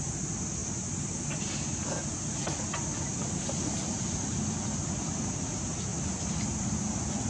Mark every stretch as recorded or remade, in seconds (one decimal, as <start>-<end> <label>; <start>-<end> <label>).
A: 0.0-7.3 recorded

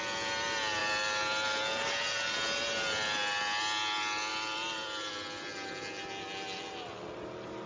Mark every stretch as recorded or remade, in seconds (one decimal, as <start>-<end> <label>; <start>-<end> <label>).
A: 0.0-4.3 recorded; 4.3-5.1 remade; 5.1-7.7 recorded

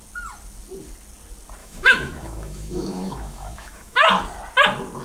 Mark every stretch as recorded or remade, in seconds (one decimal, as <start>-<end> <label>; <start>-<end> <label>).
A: 0.0-1.6 recorded; 1.6-4.1 remade; 4.1-5.0 recorded

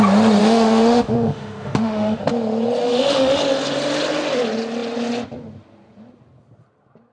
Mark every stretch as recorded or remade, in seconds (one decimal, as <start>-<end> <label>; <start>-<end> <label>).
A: 0.0-0.4 recorded; 0.4-2.2 remade; 2.2-2.8 recorded; 2.8-3.4 remade; 3.4-7.1 recorded